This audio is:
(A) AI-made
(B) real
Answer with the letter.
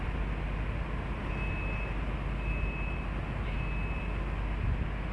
B